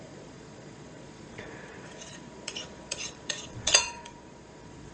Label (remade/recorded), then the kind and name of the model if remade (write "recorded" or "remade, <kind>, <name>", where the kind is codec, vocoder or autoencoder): remade, vocoder, Vocos